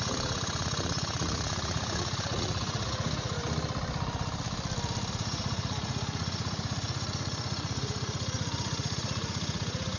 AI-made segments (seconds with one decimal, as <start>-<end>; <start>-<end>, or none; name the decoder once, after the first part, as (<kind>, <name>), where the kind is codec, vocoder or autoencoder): 0.0-3.4 (vocoder, Vocos); 5.1-10.0